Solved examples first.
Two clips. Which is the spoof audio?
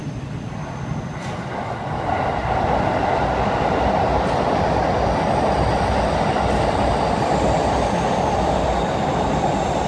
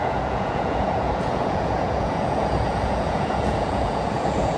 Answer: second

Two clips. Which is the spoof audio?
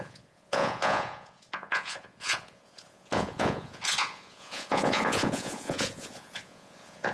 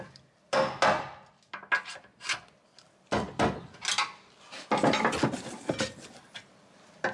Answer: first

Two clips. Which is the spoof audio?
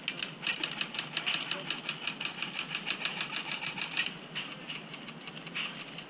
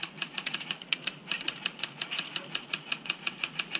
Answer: second